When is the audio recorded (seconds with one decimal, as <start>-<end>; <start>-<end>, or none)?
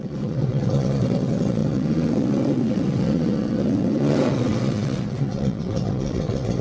none